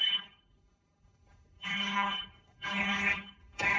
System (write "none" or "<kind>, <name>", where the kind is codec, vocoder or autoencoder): codec, HILCodec